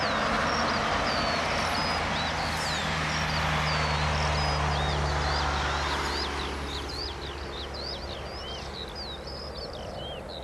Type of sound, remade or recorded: recorded